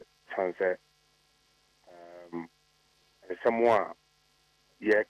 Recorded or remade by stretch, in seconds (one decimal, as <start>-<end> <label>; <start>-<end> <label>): 0.0-0.6 remade; 0.6-2.9 recorded; 2.9-3.5 remade; 3.5-5.1 recorded